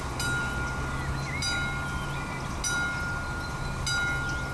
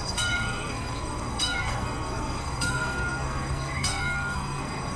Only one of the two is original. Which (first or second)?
first